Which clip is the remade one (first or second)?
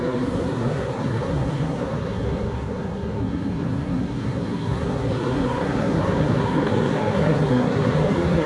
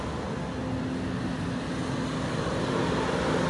first